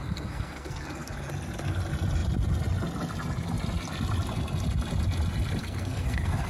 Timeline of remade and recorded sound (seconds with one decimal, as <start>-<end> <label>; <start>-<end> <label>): 0.0-1.3 remade; 1.3-5.6 recorded; 5.6-6.5 remade